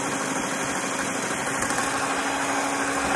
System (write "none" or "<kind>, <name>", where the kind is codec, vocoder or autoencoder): none